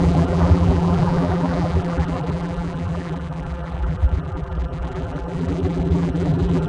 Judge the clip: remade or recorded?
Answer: remade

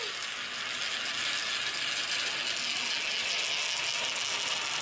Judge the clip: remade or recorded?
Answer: recorded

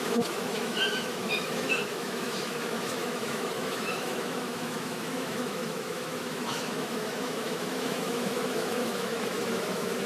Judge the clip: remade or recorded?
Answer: remade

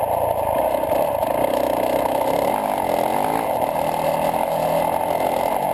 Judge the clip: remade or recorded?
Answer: recorded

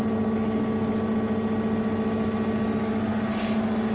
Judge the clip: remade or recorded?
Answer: recorded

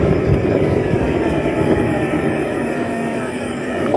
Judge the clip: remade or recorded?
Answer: remade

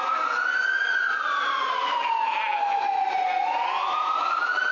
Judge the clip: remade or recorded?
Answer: recorded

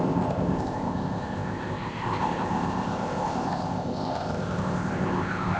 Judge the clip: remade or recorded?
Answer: remade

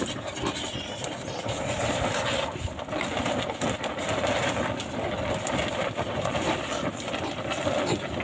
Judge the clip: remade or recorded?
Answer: recorded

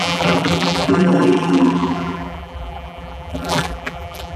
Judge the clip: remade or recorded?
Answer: remade